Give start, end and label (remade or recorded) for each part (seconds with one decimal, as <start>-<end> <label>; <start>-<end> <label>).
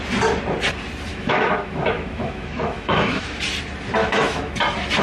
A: 0.0-1.1 recorded; 1.1-3.4 remade; 3.4-4.0 recorded; 4.0-4.5 remade; 4.5-5.0 recorded